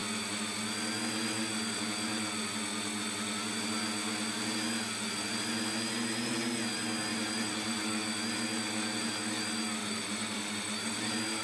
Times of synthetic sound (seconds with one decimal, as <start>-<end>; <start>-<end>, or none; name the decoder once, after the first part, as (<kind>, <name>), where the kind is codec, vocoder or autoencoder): 7.1-7.9 (vocoder, BigVGAN v2); 9.8-11.0